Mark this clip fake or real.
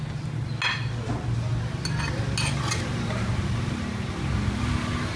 real